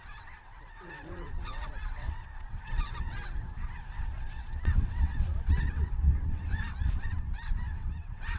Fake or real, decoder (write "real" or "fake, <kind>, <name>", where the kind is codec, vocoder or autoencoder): fake, vocoder, WaveNeXt